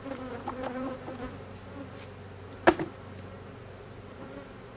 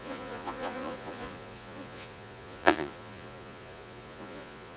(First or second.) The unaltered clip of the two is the first